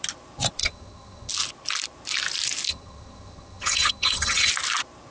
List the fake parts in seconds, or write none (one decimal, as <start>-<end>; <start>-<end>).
0.6-1.3; 2.7-4.5